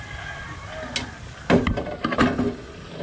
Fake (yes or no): no